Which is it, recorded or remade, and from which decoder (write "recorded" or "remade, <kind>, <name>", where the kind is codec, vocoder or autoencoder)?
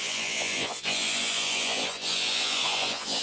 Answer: remade, vocoder, Vocos